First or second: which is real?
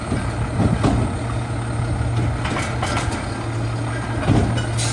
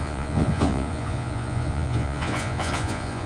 first